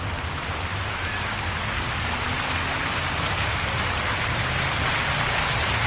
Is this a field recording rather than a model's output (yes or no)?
yes